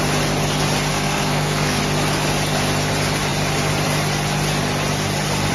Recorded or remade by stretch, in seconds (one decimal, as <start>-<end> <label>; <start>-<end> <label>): 0.0-0.9 recorded; 0.9-1.8 remade; 1.8-5.5 recorded